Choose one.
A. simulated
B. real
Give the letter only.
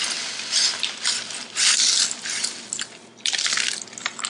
B